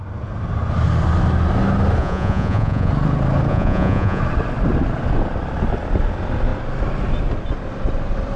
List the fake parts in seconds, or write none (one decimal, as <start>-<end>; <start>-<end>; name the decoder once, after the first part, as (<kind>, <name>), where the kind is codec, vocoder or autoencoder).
2.0-2.9 (vocoder, Vocos); 3.5-4.2